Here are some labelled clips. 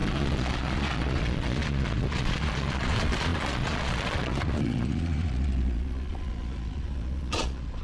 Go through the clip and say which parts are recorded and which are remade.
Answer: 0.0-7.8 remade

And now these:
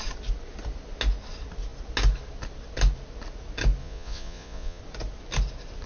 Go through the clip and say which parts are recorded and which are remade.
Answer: 0.0-3.8 recorded; 3.8-4.8 remade; 4.8-5.9 recorded